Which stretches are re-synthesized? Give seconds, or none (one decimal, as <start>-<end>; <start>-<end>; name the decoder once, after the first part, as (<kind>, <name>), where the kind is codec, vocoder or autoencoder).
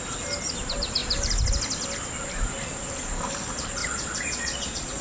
3.8-5.0 (vocoder, Vocos)